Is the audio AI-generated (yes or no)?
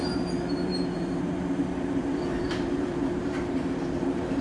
yes